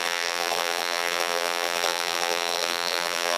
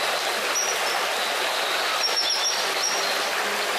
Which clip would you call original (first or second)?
second